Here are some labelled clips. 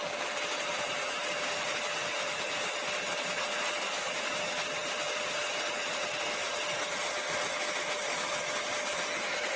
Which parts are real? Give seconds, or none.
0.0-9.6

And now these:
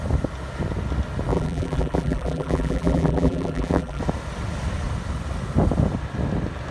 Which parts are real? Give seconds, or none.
0.0-1.3; 4.0-6.7